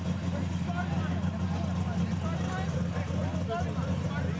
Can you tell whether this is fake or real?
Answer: real